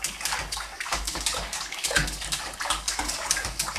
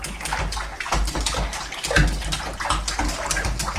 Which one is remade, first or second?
first